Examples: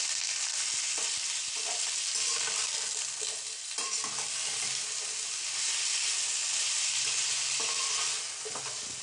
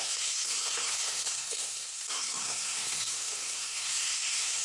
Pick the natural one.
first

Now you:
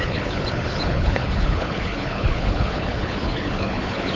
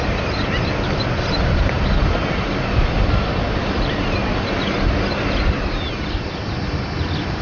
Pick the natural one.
second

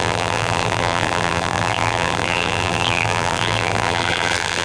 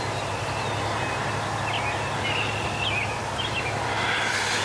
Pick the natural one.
second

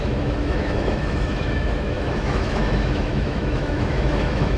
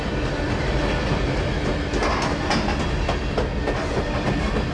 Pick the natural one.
second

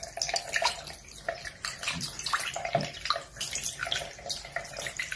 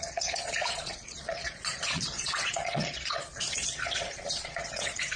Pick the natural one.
first